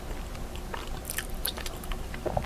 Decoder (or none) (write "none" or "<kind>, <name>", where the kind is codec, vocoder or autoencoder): none